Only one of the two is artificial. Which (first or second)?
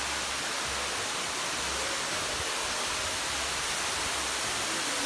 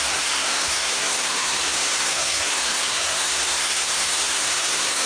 second